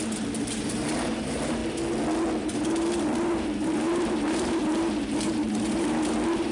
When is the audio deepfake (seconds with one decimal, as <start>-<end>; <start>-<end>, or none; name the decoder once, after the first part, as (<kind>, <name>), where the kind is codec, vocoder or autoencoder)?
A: 0.0-1.6 (vocoder, BigVGAN v2); 2.4-6.5